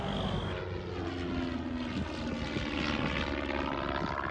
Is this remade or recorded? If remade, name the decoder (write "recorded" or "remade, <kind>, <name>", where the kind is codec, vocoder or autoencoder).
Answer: recorded